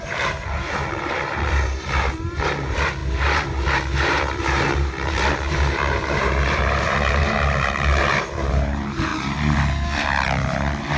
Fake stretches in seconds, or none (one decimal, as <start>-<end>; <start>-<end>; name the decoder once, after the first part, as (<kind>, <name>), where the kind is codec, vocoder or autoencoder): 0.0-9.1 (vocoder, BigVGAN v2)